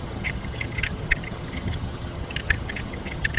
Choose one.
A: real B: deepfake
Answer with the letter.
B